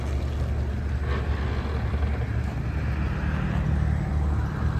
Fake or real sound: real